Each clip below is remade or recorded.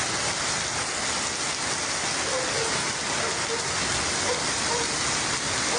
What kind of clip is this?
recorded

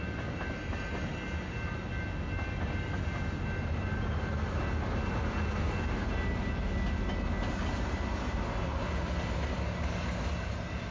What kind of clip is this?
recorded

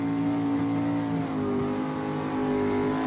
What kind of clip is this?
recorded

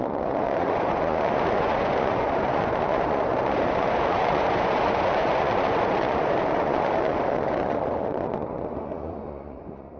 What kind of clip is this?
remade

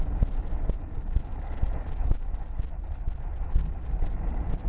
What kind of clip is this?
recorded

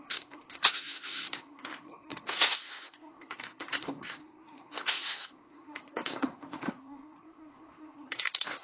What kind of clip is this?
remade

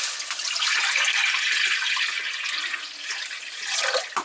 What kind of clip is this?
recorded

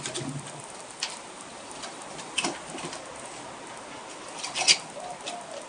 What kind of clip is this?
recorded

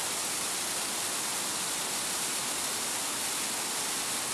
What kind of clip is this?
recorded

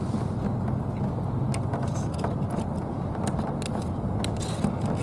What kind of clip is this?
recorded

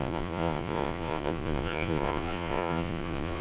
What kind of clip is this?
remade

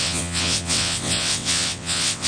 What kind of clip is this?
remade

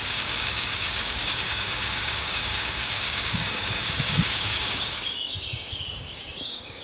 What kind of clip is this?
remade